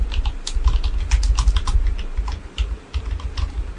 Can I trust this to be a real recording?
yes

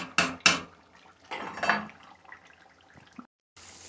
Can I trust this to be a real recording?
yes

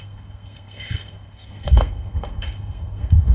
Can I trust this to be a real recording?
no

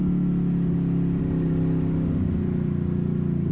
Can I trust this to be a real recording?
yes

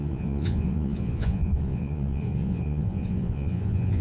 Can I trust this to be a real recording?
no